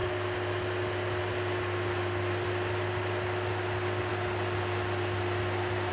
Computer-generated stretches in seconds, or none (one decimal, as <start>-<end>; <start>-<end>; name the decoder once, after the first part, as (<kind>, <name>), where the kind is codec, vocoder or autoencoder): none